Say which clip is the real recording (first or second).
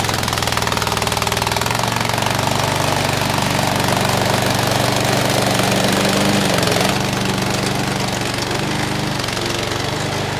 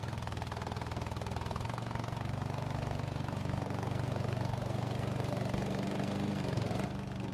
first